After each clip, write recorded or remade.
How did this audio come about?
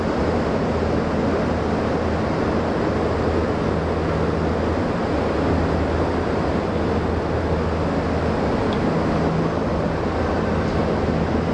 recorded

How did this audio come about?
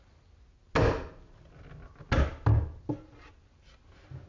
recorded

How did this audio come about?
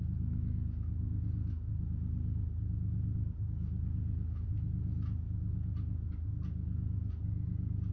recorded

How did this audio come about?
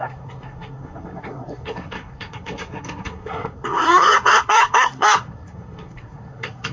remade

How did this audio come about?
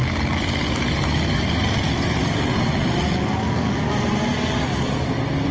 recorded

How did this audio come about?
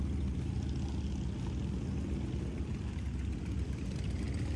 recorded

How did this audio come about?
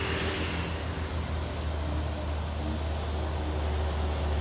recorded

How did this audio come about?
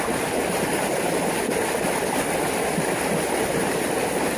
recorded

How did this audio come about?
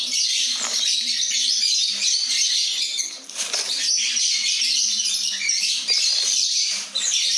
remade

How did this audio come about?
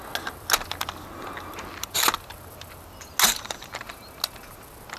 recorded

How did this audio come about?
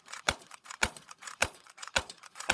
remade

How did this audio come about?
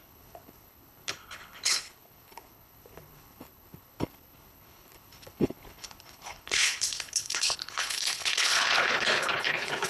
remade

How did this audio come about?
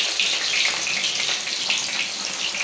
remade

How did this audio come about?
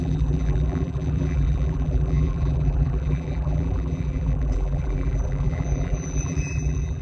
remade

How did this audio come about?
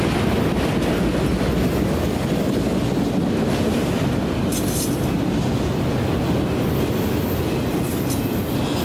recorded